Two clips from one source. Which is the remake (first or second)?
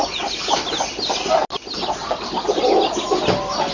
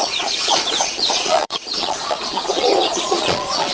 second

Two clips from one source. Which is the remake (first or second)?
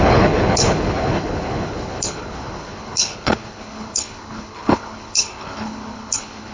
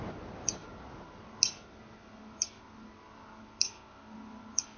first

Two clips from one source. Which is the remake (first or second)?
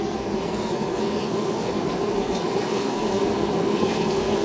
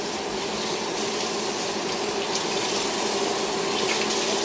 first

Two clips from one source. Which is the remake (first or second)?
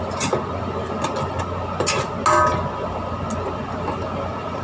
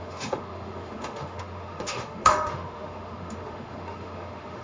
second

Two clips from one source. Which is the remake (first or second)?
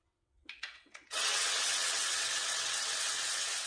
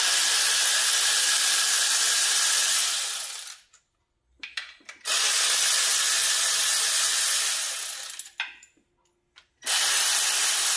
first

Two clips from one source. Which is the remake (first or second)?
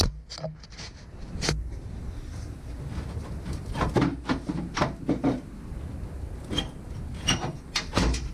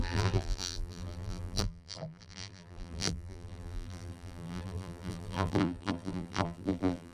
second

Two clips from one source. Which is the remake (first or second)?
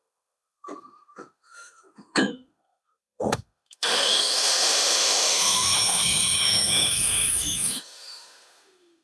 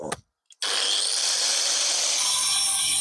first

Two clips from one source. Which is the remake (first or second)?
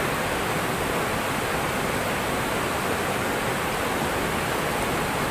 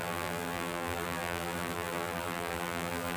second